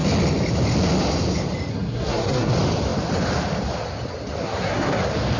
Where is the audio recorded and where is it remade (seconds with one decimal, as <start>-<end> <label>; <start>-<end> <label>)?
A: 0.0-1.7 recorded; 1.7-2.5 remade; 2.5-4.4 recorded; 4.4-5.0 remade; 5.0-5.4 recorded